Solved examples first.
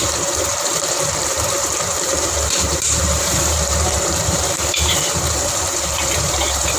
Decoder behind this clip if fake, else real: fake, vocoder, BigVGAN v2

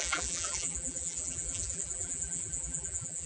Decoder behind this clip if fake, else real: fake, vocoder, BigVGAN v2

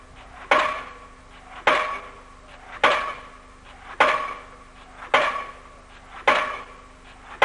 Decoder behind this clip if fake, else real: real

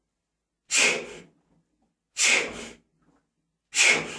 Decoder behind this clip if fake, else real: real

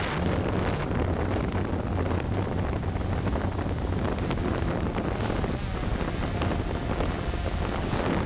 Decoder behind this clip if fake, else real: real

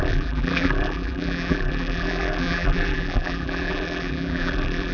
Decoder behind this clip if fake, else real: fake, vocoder, BigVGAN v2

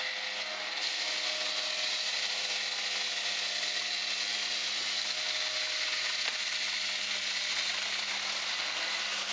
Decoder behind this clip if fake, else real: real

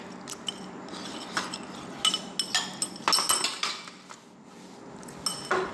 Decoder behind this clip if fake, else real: real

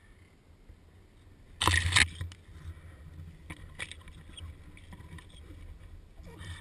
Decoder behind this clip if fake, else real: real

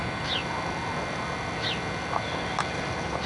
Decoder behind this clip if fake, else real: real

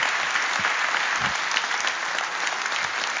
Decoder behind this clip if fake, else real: real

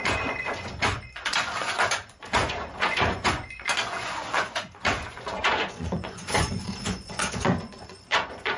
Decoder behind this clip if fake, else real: fake, vocoder, Vocos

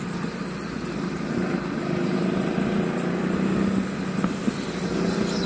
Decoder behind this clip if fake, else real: real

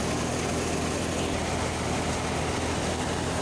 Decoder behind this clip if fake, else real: real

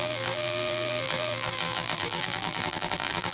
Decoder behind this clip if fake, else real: fake, vocoder, BigVGAN v2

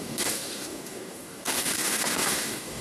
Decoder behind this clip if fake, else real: fake, codec, DAC